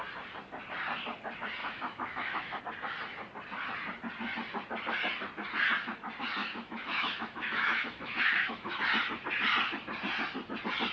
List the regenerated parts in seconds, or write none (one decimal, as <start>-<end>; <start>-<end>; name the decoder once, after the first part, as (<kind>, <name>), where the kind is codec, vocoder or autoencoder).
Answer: 1.6-2.6 (autoencoder, DAC-VAE); 6.4-8.8